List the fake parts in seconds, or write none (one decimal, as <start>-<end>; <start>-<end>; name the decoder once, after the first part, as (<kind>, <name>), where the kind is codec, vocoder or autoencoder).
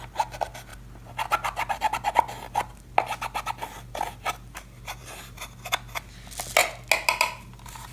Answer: none